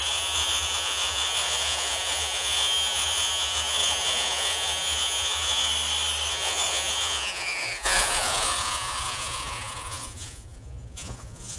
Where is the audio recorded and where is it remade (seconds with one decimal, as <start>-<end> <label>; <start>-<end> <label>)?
0.0-5.7 remade; 5.7-6.3 recorded; 6.3-11.6 remade